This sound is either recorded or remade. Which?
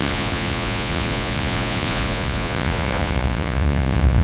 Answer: remade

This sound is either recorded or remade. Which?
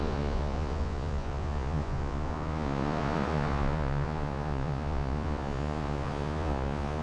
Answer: remade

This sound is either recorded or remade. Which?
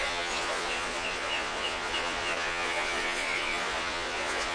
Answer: remade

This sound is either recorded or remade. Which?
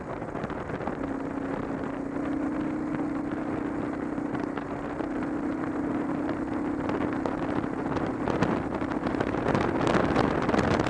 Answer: recorded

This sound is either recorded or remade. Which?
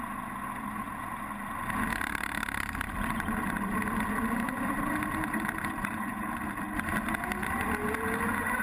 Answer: recorded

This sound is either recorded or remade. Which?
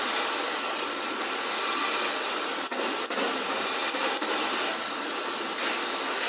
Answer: recorded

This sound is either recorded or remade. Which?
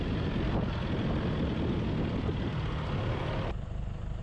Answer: recorded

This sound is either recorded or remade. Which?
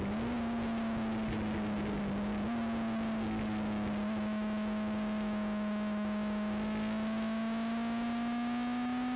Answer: recorded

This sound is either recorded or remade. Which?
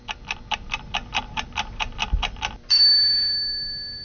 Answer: recorded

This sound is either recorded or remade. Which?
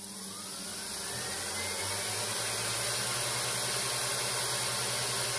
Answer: recorded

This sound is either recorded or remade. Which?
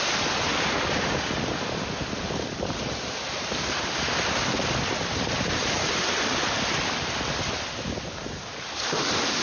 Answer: recorded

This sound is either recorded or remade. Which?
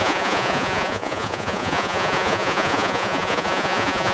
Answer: remade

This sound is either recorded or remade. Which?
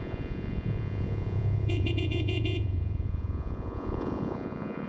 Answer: remade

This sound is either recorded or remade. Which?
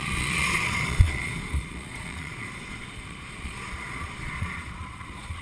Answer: remade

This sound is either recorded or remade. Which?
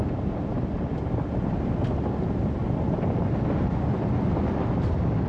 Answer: recorded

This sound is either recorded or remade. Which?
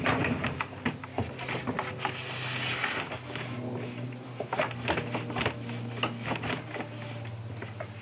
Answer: recorded